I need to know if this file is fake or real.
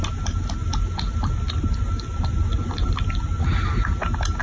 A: real